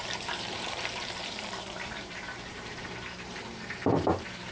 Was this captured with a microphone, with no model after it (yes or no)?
no